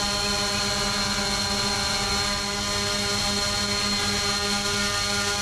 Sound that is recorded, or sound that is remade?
recorded